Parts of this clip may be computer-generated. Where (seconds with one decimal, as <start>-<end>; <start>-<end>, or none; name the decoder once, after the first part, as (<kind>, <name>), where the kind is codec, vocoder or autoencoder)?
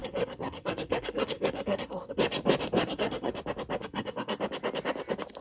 0.0-2.2 (codec, SNAC); 2.8-3.3; 3.8-4.4